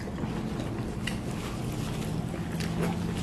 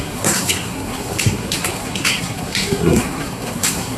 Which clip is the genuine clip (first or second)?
first